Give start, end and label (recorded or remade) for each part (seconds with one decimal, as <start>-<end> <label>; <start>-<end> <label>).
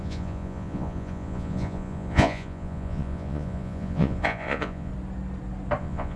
0.0-4.9 remade; 4.9-5.8 recorded; 5.8-6.2 remade